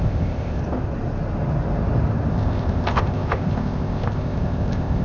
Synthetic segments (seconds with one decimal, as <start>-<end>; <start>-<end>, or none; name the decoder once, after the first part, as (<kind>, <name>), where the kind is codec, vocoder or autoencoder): 0.0-0.6 (codec, ZipCodec); 2.3-5.0